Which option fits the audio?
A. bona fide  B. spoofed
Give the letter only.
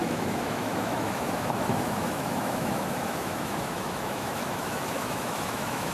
B